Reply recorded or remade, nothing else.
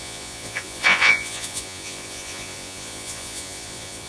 remade